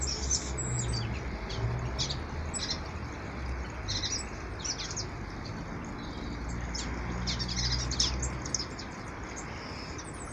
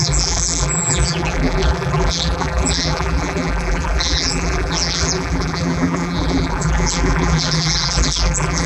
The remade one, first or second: second